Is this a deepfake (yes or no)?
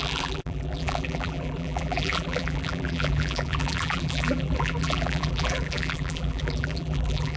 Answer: yes